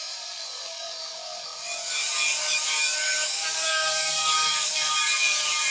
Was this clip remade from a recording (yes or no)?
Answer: yes